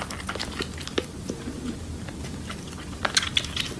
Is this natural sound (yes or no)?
yes